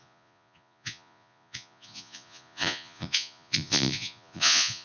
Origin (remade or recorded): remade